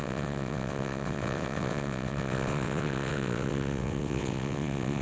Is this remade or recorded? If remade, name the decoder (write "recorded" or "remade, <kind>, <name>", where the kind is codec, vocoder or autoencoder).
remade, vocoder, WaveNeXt